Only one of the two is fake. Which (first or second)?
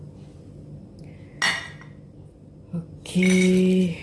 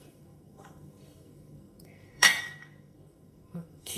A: second